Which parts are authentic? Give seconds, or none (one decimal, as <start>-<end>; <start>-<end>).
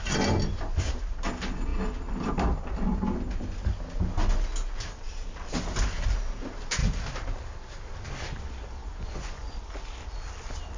0.0-8.8; 9.7-10.8